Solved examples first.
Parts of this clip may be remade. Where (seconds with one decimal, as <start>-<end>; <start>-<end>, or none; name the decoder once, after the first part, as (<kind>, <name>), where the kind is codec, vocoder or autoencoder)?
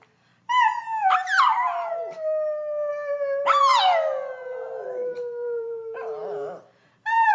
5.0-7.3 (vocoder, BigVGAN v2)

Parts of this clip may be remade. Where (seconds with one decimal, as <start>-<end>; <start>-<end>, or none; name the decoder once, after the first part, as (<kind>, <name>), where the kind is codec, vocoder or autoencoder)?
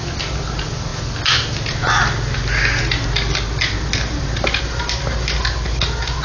none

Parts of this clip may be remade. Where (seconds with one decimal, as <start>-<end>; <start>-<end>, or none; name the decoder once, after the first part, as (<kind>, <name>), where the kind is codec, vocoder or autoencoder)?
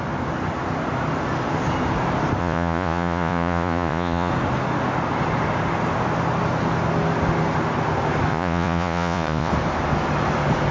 2.4-4.3 (vocoder, Vocos); 8.3-9.5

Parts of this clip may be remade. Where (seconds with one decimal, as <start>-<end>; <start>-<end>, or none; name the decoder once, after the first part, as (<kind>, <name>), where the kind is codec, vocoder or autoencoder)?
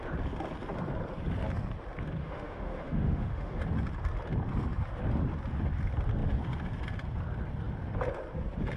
2.2-3.6 (autoencoder, DAC-VAE)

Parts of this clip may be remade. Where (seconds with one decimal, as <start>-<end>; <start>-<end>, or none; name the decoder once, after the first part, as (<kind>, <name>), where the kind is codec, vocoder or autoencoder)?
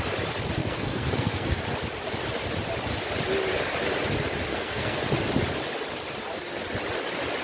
0.6-1.6 (codec, SNAC); 4.5-5.0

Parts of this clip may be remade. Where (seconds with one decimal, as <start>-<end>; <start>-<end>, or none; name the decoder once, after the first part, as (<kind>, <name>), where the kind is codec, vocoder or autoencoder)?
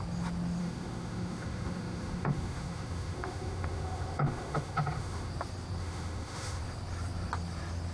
0.6-5.3 (autoencoder, DAC-VAE); 5.8-6.6